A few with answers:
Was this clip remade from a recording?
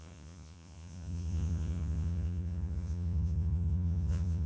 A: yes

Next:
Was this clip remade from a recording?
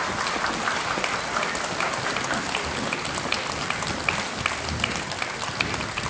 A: no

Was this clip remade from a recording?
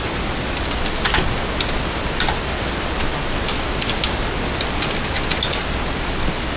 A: no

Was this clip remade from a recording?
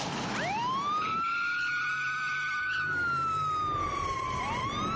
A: yes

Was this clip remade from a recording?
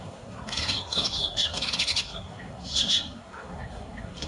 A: yes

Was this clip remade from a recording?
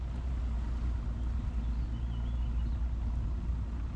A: no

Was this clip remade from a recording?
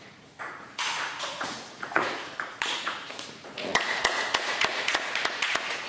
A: yes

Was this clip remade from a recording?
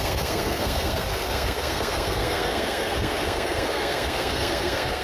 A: yes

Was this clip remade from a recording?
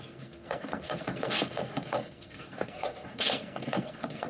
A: yes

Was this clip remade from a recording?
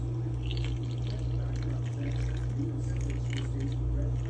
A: no